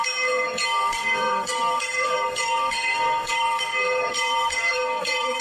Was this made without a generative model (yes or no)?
no